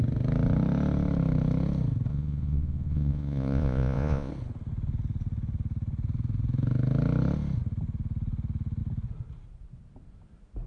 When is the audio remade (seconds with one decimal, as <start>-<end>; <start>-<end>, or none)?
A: 2.1-4.3